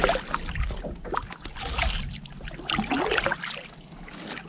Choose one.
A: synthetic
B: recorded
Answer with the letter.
B